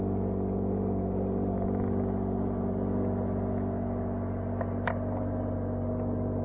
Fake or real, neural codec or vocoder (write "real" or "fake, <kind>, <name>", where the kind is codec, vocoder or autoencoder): real